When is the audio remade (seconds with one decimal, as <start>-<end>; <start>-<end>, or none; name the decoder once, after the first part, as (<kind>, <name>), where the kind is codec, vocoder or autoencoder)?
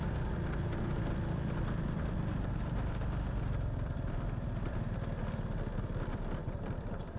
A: 2.3-3.9 (vocoder, BigVGAN v2)